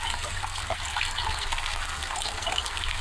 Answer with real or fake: fake